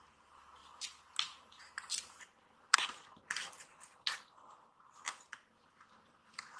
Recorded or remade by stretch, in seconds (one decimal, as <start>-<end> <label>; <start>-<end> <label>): 0.0-0.6 recorded; 0.6-3.2 remade; 3.2-6.6 recorded

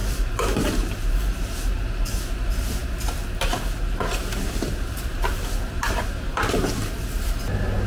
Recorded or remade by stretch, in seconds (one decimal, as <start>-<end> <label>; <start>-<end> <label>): 0.0-0.8 remade; 0.8-5.1 recorded; 5.1-6.0 remade; 6.0-7.9 recorded

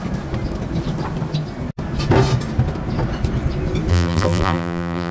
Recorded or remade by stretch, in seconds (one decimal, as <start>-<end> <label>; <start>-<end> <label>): 0.0-3.9 recorded; 3.9-5.1 remade

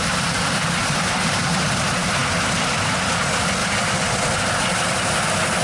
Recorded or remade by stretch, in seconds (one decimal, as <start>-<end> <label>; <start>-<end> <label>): 0.0-1.7 remade; 1.7-3.6 recorded; 3.6-4.2 remade; 4.2-5.6 recorded